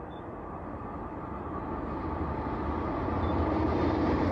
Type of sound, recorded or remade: recorded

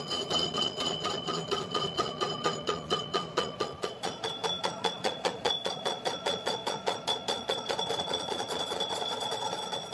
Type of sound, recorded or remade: remade